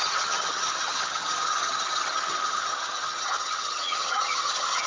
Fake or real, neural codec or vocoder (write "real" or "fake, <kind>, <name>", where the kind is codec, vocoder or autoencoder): fake, vocoder, HiFi-GAN